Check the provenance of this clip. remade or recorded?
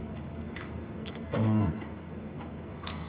remade